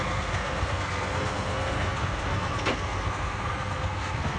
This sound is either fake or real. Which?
fake